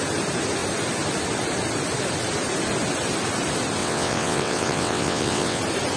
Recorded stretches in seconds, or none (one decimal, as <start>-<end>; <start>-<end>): 0.0-3.8; 5.6-6.0